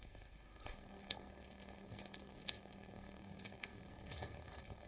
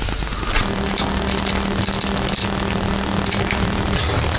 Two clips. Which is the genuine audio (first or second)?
second